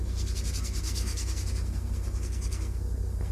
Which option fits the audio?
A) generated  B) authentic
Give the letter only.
A